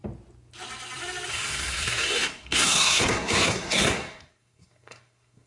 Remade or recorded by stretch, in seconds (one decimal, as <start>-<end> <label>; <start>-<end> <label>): 0.0-1.3 recorded; 1.3-5.5 remade